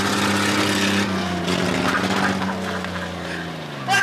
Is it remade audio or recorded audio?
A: recorded